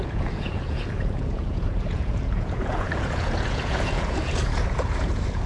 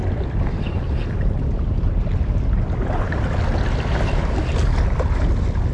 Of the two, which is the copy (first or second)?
first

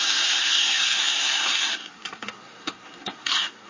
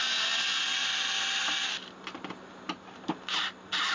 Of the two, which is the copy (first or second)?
first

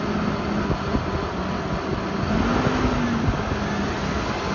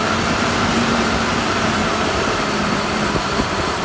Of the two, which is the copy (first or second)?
second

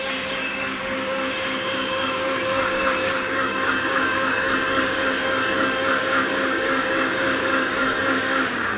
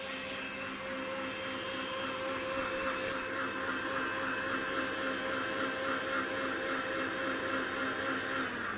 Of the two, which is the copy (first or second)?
first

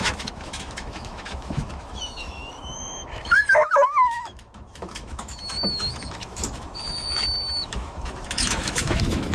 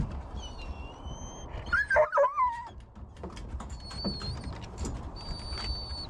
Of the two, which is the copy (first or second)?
first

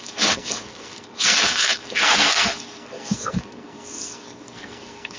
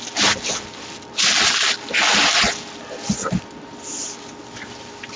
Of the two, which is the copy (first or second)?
first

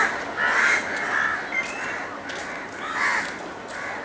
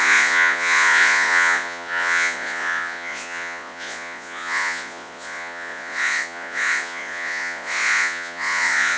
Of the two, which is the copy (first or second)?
second